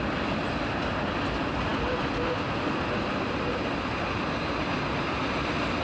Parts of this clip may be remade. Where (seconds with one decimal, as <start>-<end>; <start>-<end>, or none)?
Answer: none